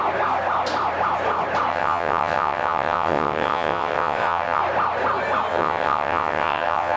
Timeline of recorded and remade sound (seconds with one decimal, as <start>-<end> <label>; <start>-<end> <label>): 0.0-1.7 recorded; 1.7-4.6 remade; 4.6-5.5 recorded; 5.5-7.0 remade